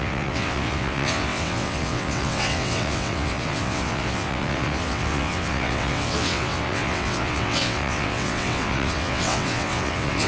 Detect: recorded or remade remade